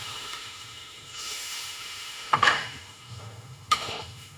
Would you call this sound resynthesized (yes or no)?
yes